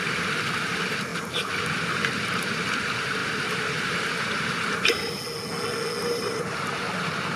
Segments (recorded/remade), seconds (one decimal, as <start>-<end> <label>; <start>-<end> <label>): 0.0-1.1 recorded; 1.1-2.7 remade; 2.7-3.2 recorded; 3.2-5.1 remade; 5.1-6.0 recorded; 6.0-6.9 remade; 6.9-7.4 recorded